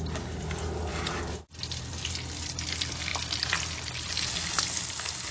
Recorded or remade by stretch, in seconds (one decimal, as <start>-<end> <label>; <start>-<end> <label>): 0.0-5.3 recorded